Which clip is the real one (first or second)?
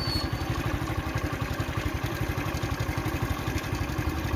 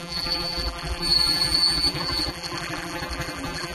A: first